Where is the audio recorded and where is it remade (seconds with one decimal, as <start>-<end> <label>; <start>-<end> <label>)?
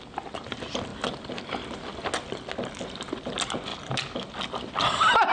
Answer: 0.0-5.3 recorded